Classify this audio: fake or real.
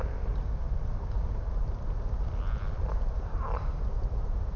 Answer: real